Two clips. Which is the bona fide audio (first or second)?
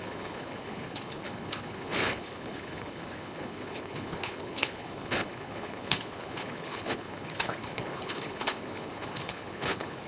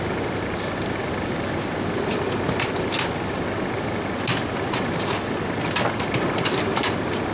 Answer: second